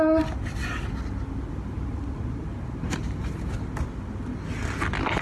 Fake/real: real